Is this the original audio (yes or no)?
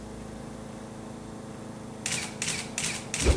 yes